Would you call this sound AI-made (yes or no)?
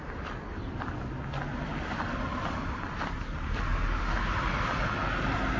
no